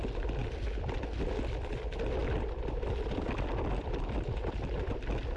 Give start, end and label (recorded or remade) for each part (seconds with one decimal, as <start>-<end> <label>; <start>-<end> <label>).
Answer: 0.0-2.2 recorded; 2.2-5.4 remade